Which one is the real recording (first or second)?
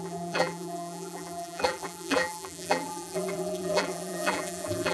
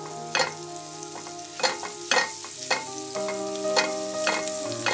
second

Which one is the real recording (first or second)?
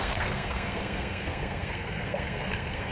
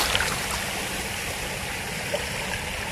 second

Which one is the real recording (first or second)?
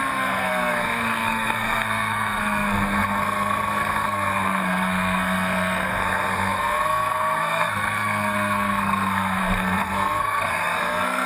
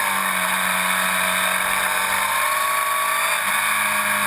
second